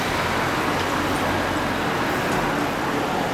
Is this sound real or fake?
real